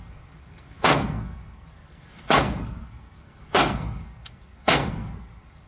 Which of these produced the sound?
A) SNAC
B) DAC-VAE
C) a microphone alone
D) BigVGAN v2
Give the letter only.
A